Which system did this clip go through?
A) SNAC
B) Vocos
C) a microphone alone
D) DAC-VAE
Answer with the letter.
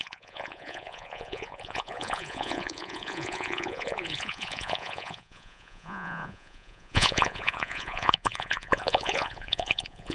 B